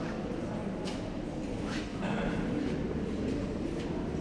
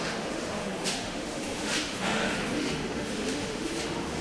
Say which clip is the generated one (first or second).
second